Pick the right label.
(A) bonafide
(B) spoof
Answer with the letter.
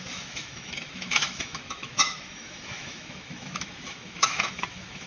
B